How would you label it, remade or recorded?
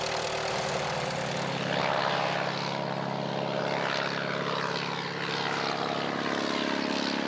recorded